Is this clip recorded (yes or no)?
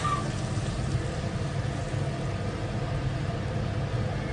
yes